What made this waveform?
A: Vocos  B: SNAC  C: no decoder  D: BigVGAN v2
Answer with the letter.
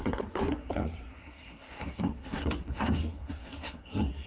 B